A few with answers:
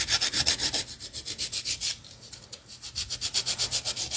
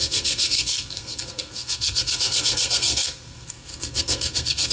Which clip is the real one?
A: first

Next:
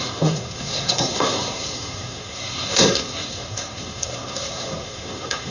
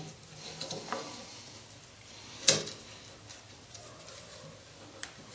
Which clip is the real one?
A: second